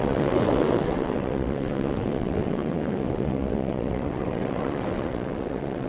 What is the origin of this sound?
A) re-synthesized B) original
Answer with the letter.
A